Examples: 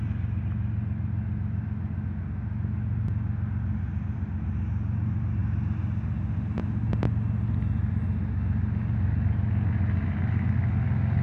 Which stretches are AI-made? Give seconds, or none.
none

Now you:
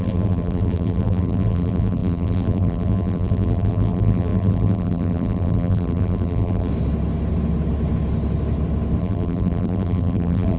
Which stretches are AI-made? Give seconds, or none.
0.0-6.7 (vocoder, BigVGAN v2); 9.0-10.6

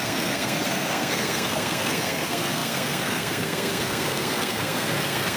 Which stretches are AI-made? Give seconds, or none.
0.0-5.4 (codec, SNAC)